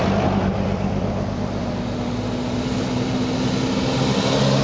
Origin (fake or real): real